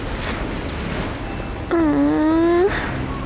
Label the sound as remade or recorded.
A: recorded